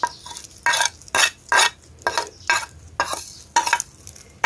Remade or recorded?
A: recorded